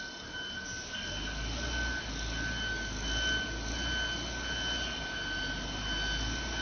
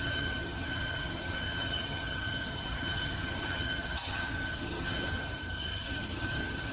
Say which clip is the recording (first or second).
first